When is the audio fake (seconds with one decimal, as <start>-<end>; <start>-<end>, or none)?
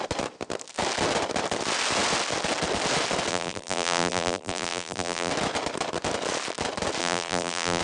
3.3-5.3; 7.0-7.8